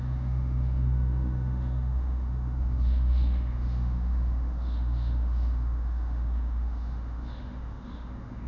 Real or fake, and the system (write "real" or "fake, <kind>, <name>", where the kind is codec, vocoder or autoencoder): fake, autoencoder, DAC-VAE